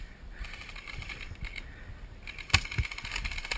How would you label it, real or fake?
real